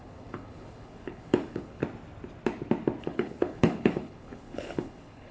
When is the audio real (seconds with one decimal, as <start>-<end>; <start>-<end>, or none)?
1.8-3.0